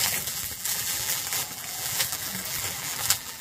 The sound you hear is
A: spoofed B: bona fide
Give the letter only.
A